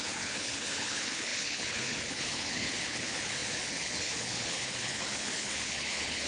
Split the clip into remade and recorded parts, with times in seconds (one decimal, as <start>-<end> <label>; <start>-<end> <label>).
0.0-6.3 remade